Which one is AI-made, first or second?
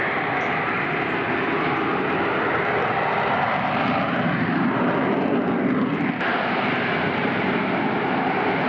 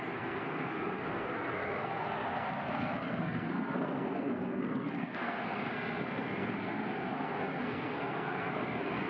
second